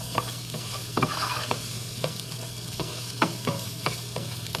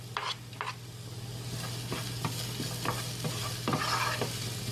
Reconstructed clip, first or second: first